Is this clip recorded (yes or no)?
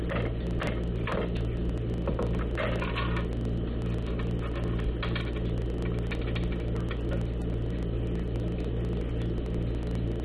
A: yes